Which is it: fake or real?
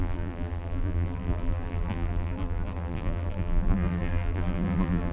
fake